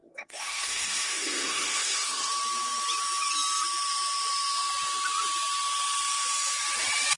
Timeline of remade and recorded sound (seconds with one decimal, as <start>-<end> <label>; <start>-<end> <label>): 0.0-2.3 remade; 2.3-7.2 recorded